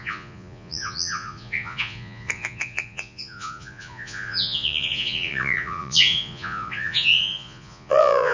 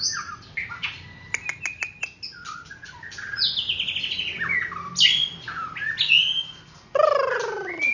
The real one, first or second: second